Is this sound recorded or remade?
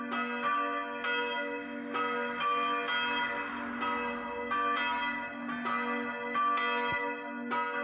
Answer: recorded